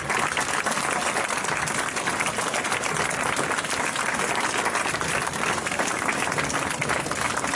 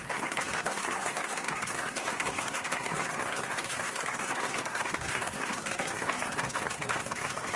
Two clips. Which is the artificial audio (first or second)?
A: second